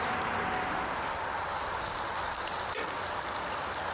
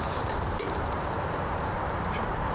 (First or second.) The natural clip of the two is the first